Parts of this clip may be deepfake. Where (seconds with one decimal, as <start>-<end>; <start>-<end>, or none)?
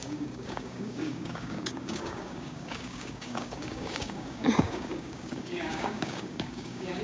0.0-7.0